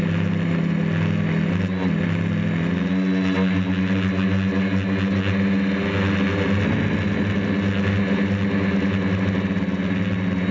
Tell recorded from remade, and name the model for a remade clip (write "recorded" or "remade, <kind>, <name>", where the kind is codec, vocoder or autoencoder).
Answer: recorded